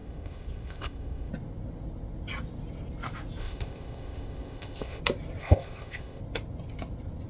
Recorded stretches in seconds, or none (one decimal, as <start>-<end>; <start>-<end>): 1.3-3.4; 5.0-5.4; 6.2-7.3